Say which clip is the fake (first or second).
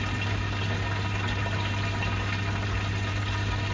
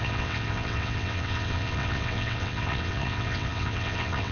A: second